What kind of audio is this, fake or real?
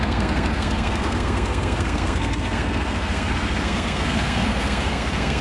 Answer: fake